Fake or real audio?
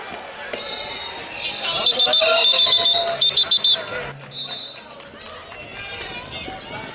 real